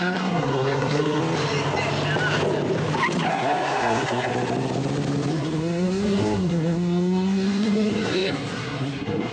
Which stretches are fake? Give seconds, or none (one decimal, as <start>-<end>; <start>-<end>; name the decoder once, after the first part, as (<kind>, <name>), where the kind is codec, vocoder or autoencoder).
0.0-1.2 (codec, SNAC); 3.3-4.3; 5.3-9.3